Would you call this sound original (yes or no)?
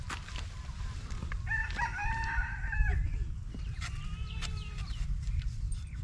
no